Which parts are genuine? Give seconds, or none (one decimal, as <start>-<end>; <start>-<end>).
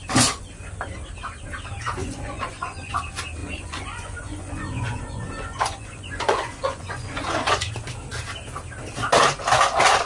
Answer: 0.7-2.0; 2.9-3.4; 7.7-10.1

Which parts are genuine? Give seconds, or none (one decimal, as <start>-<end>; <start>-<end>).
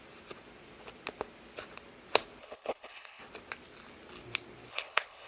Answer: 0.0-2.4; 3.2-4.7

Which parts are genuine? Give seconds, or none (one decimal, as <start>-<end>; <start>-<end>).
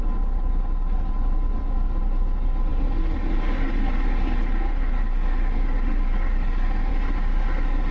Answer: 0.0-7.9